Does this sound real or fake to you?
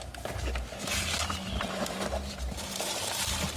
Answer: fake